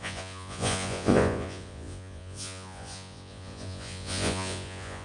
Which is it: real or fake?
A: fake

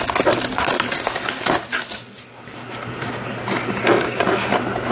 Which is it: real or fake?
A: real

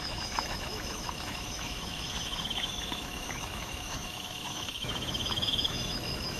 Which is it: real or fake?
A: fake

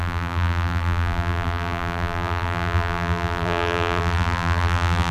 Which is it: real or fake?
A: fake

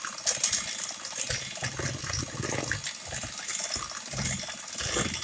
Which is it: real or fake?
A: real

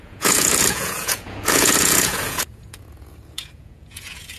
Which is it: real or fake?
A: fake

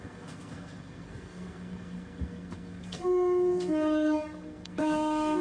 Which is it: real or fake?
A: fake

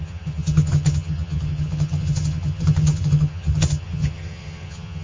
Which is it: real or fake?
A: fake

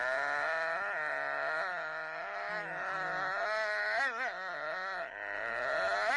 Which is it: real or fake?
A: real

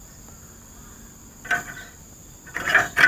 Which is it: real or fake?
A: real